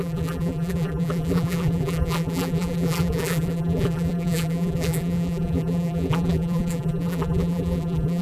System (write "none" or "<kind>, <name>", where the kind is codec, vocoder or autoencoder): vocoder, BigVGAN v2